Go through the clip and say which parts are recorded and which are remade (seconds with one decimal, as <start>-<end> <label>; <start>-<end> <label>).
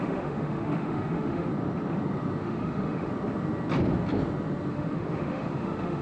0.0-1.5 remade; 1.5-2.4 recorded; 2.4-3.1 remade; 3.1-4.7 recorded; 4.7-6.0 remade